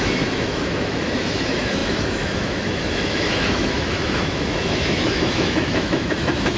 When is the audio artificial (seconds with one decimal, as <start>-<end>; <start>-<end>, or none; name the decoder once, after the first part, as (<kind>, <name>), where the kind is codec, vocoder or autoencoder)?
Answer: 0.0-6.6 (autoencoder, DAC-VAE)